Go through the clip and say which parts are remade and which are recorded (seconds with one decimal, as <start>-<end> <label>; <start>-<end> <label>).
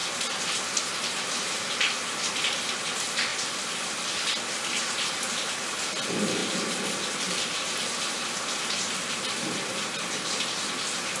0.0-11.2 recorded